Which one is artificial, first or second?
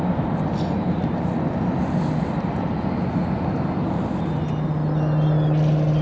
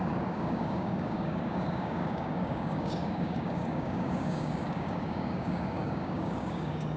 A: second